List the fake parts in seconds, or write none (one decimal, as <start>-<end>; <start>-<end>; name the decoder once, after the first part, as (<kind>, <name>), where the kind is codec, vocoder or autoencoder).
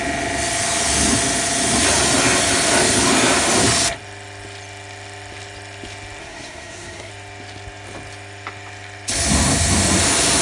6.2-7.1 (codec, SNAC)